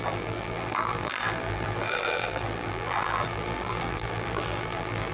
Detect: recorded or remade remade